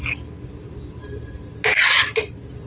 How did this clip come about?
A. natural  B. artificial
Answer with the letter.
A